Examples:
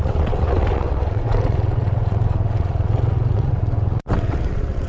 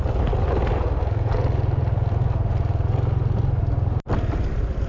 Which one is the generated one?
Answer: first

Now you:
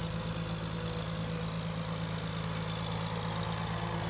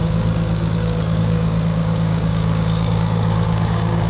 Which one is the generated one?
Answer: second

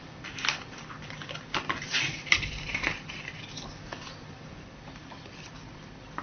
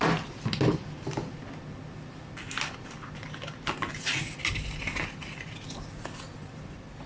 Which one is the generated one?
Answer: first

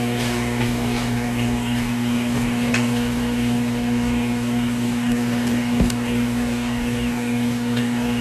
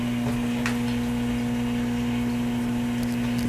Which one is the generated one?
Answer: first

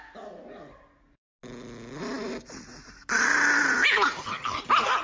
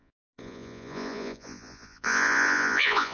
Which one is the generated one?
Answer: second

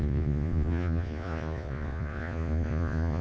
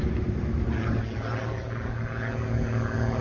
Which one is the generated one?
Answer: first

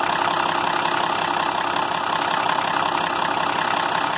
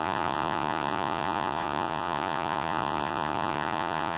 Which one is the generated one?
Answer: second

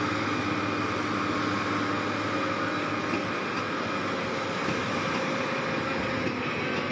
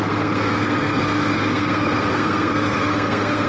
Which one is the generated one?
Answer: second